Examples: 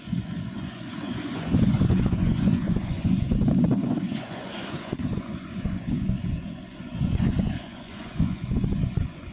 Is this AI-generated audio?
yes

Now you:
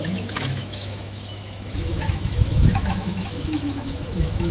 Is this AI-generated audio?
yes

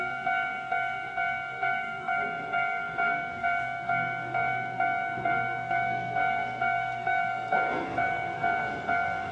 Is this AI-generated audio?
yes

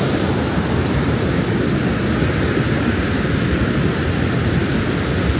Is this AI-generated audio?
no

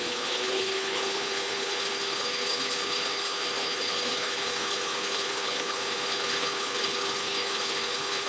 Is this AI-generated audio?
yes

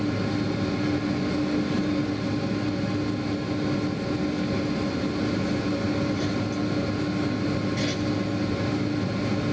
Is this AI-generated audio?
no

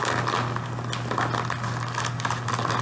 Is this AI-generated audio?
no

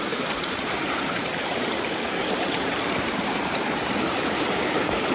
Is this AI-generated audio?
yes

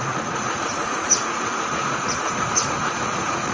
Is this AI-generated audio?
yes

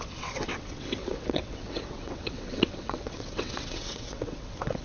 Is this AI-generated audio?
yes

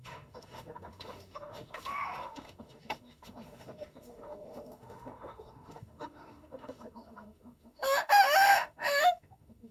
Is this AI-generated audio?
yes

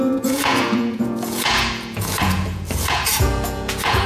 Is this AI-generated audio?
yes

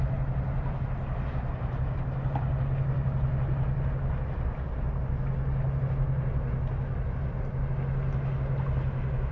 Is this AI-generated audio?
no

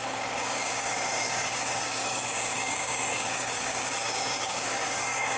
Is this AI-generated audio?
yes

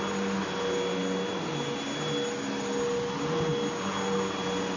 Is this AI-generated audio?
no